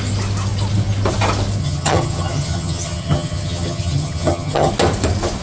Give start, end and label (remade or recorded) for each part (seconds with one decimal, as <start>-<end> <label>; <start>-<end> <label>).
0.0-1.6 recorded; 1.6-4.7 remade; 4.7-5.4 recorded